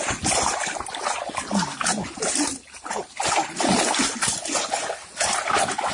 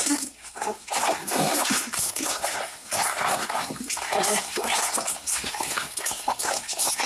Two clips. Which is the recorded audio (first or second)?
first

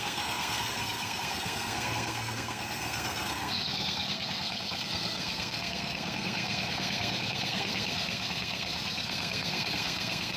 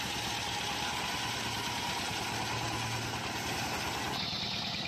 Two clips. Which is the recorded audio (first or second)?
second